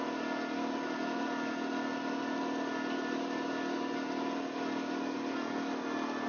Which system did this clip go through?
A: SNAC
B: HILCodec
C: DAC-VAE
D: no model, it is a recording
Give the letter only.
D